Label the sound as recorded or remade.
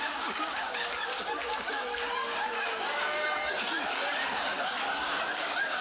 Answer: remade